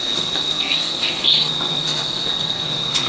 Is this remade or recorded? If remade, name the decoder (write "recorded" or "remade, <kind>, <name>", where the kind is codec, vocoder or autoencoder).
remade, codec, SNAC